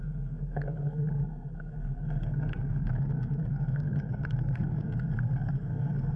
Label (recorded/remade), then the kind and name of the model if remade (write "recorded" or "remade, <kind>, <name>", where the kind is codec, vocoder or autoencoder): remade, codec, SNAC